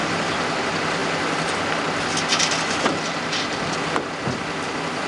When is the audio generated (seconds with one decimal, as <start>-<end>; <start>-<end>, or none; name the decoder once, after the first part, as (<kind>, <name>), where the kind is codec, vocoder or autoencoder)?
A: none